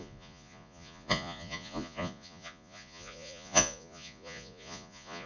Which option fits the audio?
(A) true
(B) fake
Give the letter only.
B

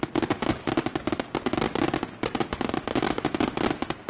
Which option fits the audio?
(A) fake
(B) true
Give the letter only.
B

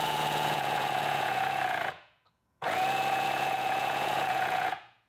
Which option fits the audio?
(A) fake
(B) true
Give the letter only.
A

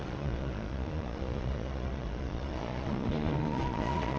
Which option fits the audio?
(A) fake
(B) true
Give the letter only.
A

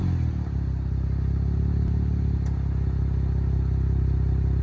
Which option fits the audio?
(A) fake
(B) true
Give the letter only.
B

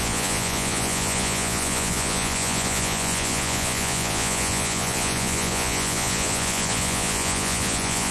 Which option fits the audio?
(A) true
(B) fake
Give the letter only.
B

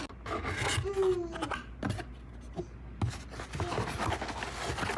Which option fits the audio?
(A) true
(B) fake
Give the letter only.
A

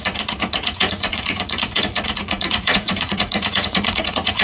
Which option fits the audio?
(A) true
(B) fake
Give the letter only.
B